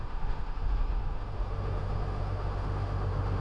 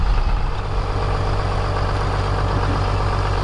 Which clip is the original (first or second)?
second